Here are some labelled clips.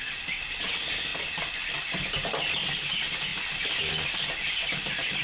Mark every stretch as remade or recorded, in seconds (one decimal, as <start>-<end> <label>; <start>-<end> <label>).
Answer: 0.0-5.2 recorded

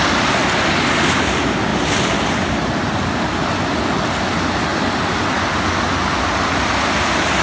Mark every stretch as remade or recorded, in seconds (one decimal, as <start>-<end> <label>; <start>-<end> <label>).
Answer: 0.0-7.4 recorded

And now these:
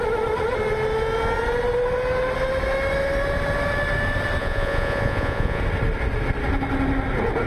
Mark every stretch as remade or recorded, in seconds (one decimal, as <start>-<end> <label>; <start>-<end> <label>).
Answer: 0.0-4.4 recorded; 4.4-5.6 remade; 5.6-7.5 recorded

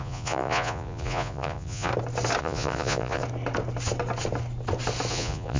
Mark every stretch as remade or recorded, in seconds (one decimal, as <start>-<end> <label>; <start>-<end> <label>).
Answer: 0.0-1.9 remade; 1.9-2.4 recorded; 2.4-3.2 remade; 3.2-5.1 recorded; 5.1-5.6 remade

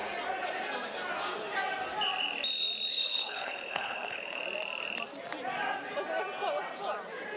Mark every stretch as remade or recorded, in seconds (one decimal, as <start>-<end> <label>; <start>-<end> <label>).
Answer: 0.0-2.9 recorded; 2.9-4.4 remade; 4.4-7.4 recorded

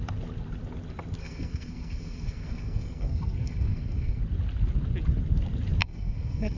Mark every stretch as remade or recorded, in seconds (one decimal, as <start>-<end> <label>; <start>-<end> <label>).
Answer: 0.0-1.2 recorded; 1.2-4.2 remade; 4.2-5.8 recorded; 5.8-6.6 remade